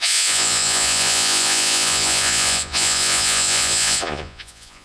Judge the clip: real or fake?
fake